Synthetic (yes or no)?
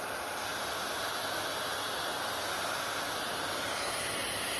no